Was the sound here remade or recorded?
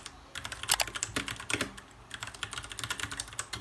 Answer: recorded